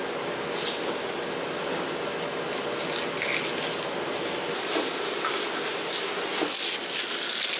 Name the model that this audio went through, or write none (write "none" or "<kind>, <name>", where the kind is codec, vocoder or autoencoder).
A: none